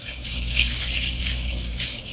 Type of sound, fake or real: fake